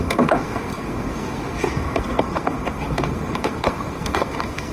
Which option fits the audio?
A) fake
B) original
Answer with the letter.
A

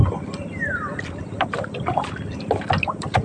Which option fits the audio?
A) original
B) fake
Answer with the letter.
A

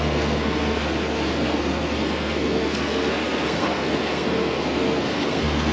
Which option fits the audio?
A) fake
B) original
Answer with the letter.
A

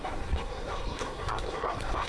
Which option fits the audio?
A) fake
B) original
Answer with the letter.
A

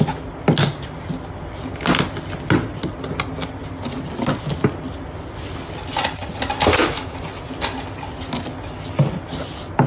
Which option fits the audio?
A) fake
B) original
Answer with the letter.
B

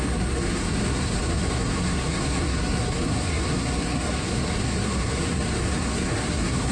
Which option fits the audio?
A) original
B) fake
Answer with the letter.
B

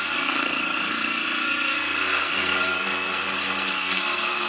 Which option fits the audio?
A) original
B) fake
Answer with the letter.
B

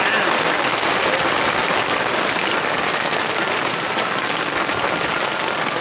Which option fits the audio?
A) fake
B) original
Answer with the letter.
B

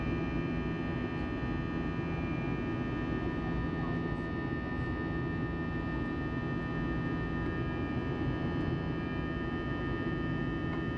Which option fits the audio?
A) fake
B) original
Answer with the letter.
B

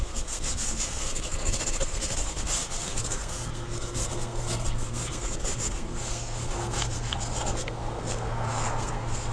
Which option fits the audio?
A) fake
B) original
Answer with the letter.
A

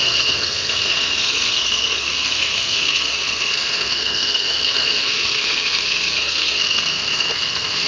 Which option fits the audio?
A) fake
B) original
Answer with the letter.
A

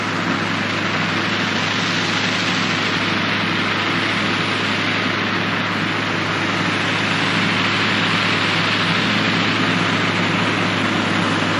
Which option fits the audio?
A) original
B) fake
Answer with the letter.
A